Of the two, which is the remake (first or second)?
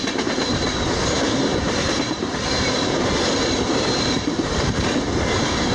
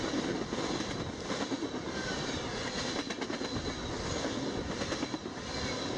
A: first